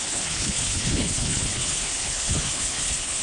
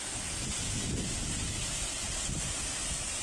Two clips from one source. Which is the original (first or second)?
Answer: second